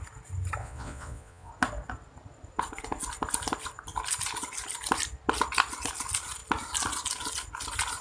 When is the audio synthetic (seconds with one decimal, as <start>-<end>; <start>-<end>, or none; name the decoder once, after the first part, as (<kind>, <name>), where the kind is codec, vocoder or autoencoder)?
0.6-1.5 (vocoder, Vocos)